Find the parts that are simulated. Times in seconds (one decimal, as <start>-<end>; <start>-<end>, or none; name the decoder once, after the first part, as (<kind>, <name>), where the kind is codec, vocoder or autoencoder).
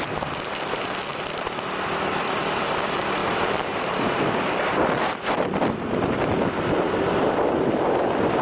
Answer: 1.1-2.2 (vocoder, BigVGAN v2); 3.2-6.8